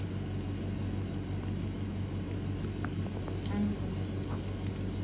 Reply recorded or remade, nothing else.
recorded